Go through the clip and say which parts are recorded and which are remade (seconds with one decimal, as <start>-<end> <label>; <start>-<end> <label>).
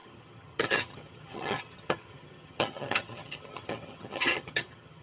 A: 0.0-5.0 remade